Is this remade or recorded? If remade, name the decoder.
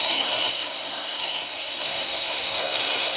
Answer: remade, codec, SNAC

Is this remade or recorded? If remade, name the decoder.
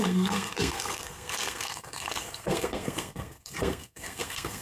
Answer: remade, codec, SNAC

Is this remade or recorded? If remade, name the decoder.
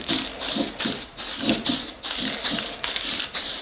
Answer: recorded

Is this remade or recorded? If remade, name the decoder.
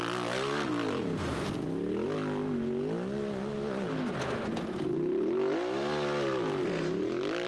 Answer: recorded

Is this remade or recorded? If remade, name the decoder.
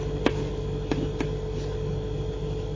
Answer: recorded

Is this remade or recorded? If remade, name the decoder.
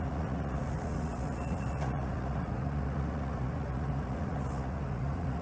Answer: remade, vocoder, Vocos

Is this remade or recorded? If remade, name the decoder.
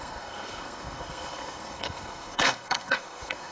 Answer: remade, codec, SNAC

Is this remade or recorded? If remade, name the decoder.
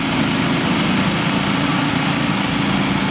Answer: recorded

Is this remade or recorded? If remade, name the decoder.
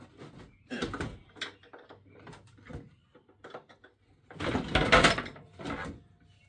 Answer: recorded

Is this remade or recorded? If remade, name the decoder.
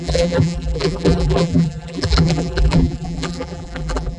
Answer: remade, vocoder, BigVGAN v2